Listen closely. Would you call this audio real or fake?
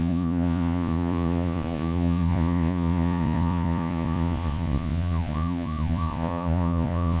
fake